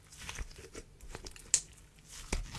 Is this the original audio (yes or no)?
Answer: yes